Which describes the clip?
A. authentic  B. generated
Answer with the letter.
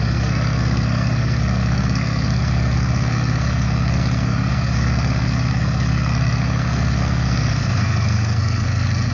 B